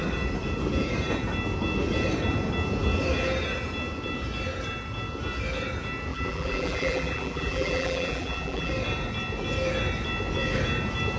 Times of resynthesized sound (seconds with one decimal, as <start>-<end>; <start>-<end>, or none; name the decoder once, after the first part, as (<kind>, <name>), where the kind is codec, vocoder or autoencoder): 6.1-8.7 (vocoder, BigVGAN v2)